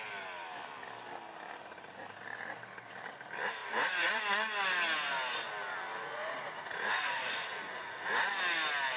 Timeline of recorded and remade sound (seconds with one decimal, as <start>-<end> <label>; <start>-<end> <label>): 0.0-3.6 recorded; 3.6-4.2 remade; 4.2-5.9 recorded; 5.9-8.4 remade; 8.4-9.0 recorded